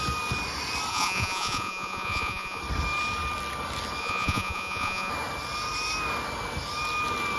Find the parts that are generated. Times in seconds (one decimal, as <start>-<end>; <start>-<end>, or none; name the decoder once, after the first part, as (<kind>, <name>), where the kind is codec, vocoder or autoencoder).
0.9-2.6 (vocoder, Vocos); 4.0-5.1